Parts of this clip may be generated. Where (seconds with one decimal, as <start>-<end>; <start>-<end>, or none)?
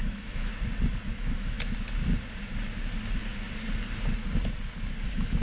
0.0-0.5; 1.1-1.7